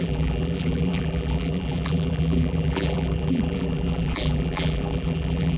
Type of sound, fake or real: fake